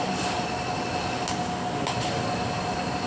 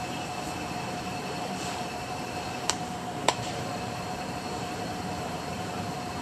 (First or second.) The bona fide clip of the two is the first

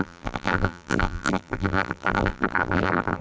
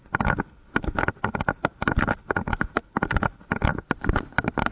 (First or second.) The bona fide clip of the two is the second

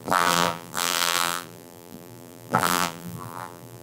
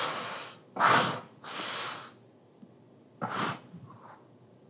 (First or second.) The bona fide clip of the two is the second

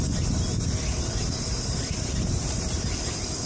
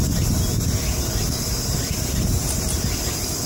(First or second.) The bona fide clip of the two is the second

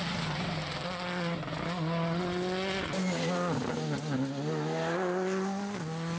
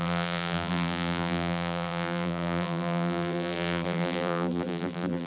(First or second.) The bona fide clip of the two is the first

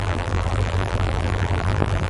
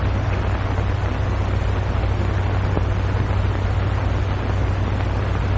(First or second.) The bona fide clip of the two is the second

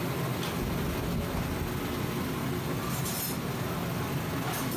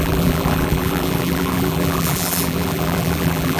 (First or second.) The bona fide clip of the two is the first